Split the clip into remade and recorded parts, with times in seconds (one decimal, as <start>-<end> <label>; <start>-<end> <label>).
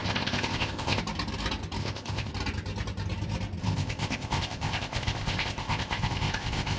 0.0-1.0 remade; 1.0-1.8 recorded; 1.8-2.3 remade; 2.3-3.6 recorded; 3.6-6.8 remade